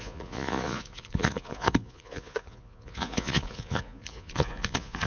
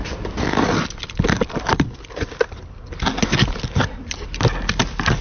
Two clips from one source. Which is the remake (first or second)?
first